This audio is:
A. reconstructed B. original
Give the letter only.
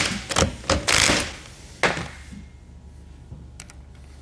B